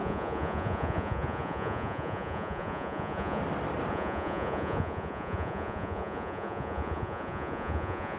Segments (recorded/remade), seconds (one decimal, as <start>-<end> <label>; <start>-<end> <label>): 0.0-3.4 remade; 3.4-3.9 recorded; 3.9-8.2 remade